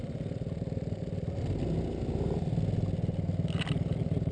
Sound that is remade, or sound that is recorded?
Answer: recorded